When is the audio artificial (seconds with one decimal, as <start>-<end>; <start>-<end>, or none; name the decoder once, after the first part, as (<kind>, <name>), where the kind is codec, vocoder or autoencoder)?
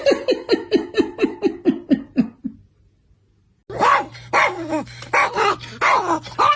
none